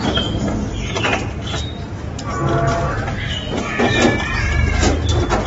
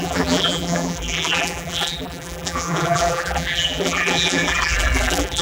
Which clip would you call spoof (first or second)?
second